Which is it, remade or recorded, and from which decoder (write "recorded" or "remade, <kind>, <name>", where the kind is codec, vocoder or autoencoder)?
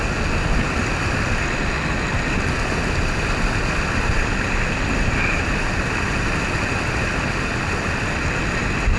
recorded